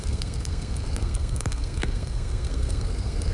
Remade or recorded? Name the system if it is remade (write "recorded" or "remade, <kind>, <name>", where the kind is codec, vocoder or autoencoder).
remade, codec, SNAC